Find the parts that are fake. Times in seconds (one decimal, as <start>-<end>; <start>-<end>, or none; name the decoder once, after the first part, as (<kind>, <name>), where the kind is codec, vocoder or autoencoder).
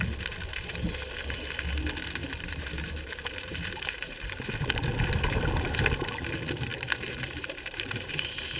2.2-3.1 (vocoder, BigVGAN v2); 3.5-4.5; 6.7-8.1